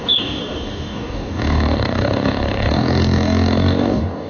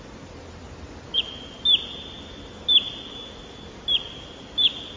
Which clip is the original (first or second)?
second